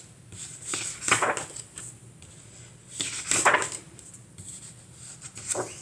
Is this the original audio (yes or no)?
yes